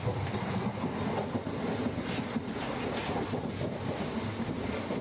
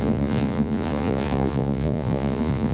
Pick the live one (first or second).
first